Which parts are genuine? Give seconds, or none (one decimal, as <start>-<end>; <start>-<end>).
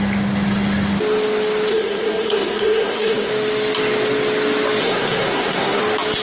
0.0-1.7; 3.3-4.8; 5.8-6.2